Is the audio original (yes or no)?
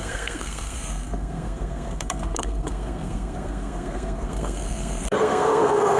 no